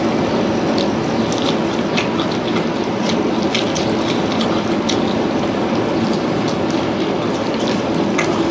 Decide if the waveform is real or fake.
real